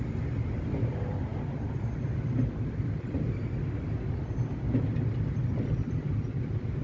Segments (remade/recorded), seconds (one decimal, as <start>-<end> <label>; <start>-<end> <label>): 0.0-6.8 recorded